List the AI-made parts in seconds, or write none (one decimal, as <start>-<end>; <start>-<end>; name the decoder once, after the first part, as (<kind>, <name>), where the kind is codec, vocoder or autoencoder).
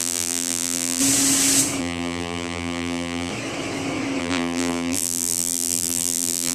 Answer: 0.0-1.0 (vocoder, BigVGAN v2); 1.8-3.3; 4.2-6.5